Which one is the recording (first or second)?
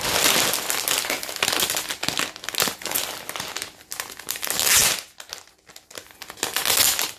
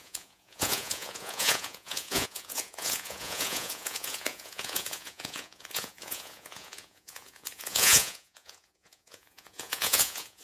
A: first